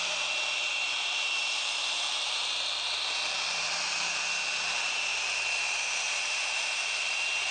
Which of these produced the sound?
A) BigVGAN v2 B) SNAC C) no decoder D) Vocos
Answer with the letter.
A